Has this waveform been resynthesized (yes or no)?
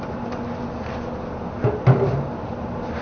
no